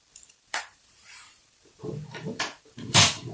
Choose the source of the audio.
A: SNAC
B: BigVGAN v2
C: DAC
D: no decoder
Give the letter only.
B